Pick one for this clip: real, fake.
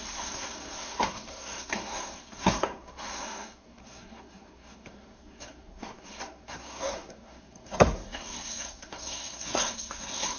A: fake